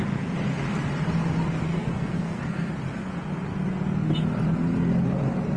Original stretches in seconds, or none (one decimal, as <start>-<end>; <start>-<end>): 0.0-1.7; 2.7-5.6

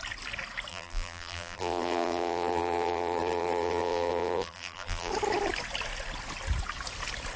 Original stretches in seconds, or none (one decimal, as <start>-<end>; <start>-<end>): 0.0-0.7; 5.1-7.4

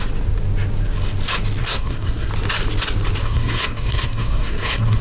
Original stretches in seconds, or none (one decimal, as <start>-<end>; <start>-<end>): 0.0-1.6; 2.3-3.2

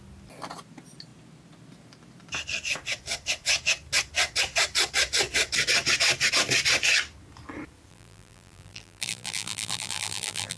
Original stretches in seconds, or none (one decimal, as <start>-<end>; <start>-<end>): 0.0-7.9

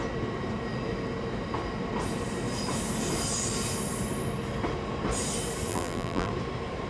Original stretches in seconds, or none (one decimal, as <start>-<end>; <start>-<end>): 0.0-5.7; 6.3-6.9

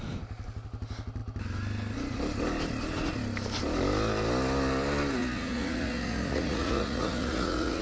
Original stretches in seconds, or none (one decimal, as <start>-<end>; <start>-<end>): 0.0-5.2